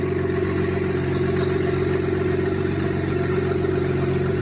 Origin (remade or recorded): recorded